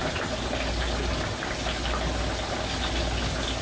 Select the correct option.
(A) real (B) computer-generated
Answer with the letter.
A